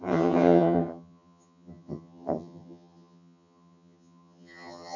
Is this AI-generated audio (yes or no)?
yes